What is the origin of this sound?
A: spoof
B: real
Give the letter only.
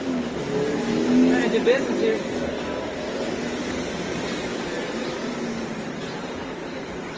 B